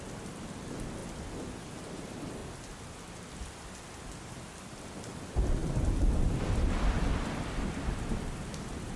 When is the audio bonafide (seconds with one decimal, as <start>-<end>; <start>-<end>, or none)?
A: 0.0-9.0